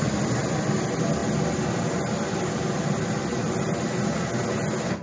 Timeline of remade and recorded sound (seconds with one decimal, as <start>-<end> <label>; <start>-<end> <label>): 0.0-5.0 recorded